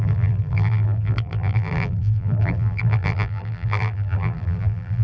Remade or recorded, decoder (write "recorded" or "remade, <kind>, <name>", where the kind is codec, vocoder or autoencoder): remade, vocoder, BigVGAN v2